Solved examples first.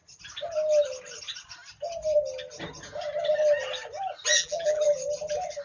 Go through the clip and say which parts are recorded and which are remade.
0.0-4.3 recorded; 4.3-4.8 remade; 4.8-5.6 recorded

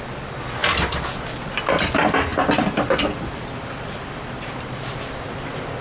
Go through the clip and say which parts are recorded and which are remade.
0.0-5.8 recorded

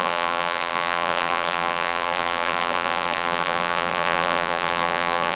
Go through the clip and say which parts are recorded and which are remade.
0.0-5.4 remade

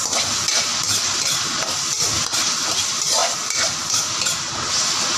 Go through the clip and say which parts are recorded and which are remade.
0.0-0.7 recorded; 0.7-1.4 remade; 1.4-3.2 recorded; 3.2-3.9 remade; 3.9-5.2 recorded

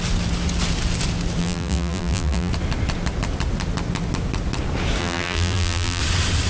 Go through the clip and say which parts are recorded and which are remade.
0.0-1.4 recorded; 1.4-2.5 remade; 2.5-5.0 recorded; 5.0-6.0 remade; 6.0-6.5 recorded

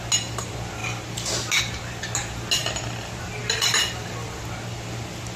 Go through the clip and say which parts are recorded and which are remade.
0.0-3.4 recorded; 3.4-4.4 remade; 4.4-5.4 recorded

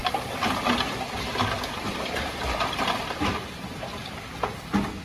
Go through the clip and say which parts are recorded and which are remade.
0.0-3.0 remade; 3.0-5.0 recorded

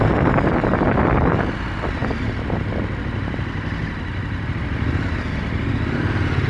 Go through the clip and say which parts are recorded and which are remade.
0.0-6.5 recorded